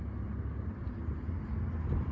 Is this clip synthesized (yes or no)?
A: no